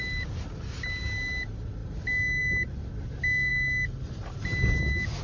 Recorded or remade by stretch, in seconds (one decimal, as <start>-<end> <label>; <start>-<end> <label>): 0.0-5.2 recorded